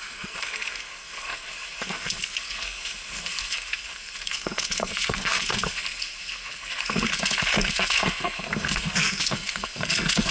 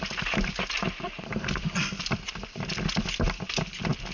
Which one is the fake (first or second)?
first